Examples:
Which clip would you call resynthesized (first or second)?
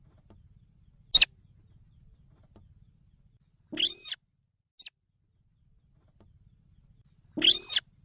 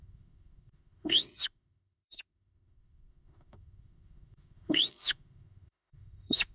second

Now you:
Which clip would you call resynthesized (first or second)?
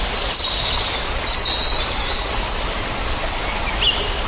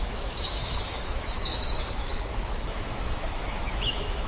second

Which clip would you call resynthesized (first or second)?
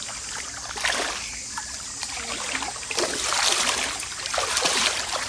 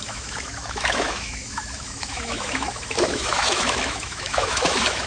second